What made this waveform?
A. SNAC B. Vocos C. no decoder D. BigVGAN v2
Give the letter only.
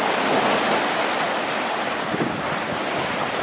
C